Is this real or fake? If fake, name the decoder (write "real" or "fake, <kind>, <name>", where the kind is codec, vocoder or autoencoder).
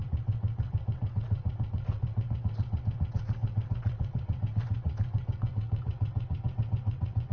fake, vocoder, WaveNeXt